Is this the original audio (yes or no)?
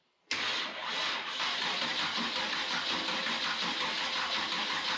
yes